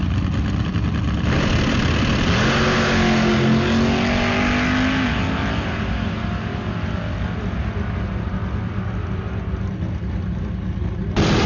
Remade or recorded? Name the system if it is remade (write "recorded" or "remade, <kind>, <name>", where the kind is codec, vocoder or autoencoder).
recorded